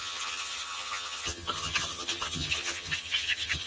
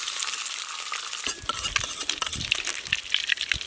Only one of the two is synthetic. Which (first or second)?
first